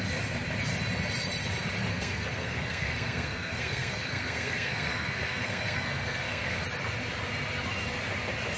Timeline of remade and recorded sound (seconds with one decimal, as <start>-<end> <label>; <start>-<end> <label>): 0.0-1.9 recorded; 1.9-6.6 remade; 6.6-8.6 recorded